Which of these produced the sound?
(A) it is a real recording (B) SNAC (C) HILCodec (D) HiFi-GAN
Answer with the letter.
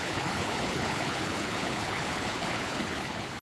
C